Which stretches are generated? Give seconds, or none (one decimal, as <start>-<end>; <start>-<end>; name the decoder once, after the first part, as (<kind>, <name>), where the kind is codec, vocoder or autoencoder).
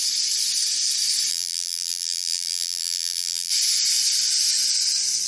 1.3-3.5 (vocoder, BigVGAN v2)